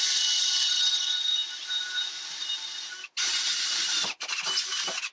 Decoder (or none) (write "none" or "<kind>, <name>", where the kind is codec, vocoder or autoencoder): none